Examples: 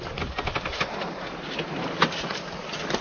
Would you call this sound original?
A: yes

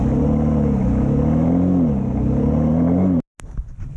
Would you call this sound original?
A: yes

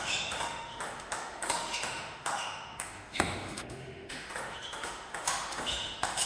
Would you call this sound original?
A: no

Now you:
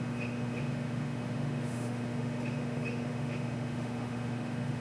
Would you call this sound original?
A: no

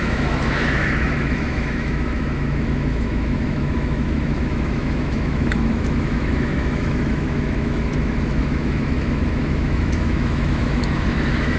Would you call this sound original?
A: no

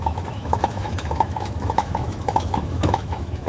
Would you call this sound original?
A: no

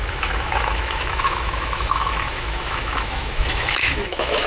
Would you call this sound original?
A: no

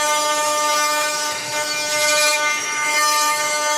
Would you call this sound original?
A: no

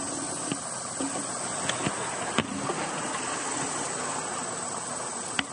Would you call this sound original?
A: yes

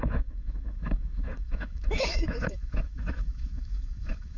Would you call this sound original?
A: no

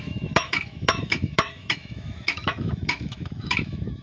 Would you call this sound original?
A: no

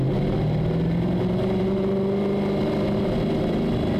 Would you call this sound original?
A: yes